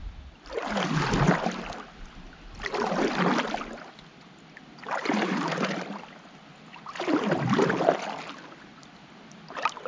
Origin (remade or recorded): recorded